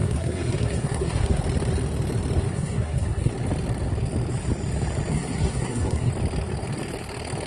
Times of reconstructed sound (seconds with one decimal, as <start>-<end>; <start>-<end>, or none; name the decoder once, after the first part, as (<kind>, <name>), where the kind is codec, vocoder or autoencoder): 0.0-1.4 (codec, SNAC); 2.5-3.3; 5.1-6.1